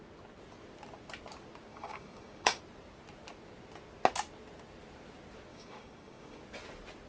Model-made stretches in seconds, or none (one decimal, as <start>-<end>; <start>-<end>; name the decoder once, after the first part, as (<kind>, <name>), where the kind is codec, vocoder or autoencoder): 1.7-2.6 (codec, DAC); 5.5-6.4